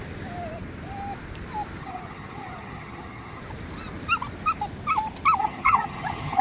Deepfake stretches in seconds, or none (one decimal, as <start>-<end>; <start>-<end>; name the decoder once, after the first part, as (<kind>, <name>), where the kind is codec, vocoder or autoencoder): 1.8-3.4 (vocoder, HiFi-GAN); 5.4-6.4